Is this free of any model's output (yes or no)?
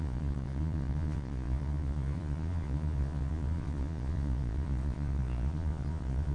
no